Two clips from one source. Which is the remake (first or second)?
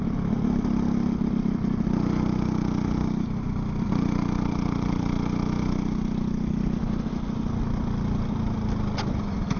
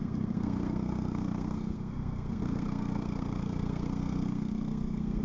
second